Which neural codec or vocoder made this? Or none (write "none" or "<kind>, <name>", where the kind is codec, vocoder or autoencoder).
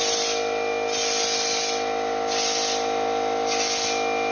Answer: none